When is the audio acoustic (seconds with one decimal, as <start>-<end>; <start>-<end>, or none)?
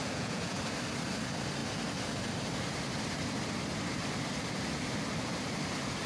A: 0.6-6.1